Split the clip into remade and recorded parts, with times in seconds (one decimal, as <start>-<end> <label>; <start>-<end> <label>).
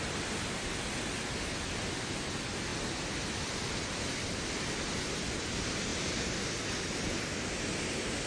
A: 0.0-8.3 recorded